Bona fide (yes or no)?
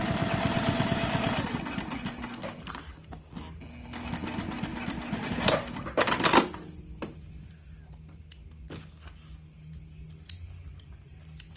yes